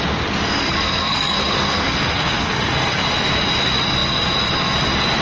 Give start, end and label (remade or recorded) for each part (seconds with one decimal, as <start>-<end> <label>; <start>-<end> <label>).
0.0-0.6 recorded; 0.6-3.0 remade; 3.0-5.2 recorded